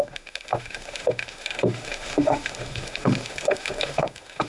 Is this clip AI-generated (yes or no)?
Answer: yes